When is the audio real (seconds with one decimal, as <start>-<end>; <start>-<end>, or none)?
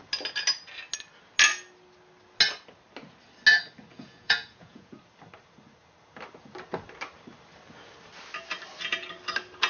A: 0.0-3.9; 5.0-9.7